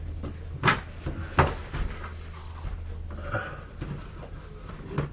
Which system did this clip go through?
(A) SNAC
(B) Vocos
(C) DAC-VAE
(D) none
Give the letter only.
D